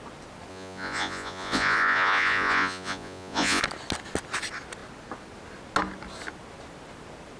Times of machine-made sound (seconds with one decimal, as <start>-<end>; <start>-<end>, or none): 0.5-3.6